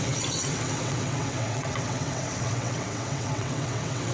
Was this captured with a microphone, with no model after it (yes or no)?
no